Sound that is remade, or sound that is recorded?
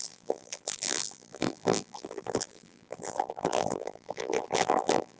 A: remade